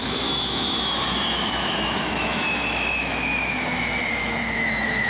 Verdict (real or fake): fake